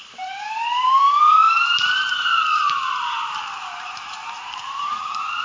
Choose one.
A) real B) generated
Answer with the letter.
B